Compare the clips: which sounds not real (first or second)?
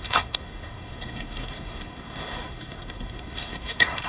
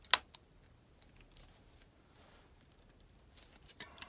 first